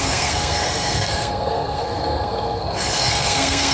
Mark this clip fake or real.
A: fake